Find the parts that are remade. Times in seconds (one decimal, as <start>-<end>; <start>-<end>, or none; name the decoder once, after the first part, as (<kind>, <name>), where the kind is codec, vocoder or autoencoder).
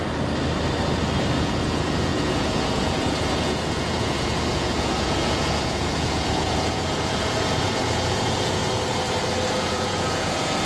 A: 1.4-8.6 (vocoder, Vocos); 9.5-10.7